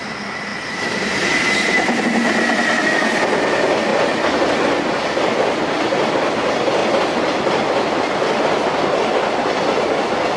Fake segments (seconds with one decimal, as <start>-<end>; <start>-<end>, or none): 0.5-2.0